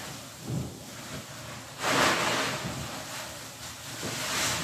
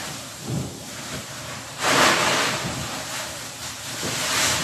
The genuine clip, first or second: first